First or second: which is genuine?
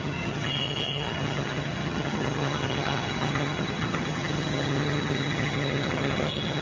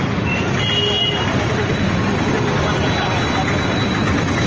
second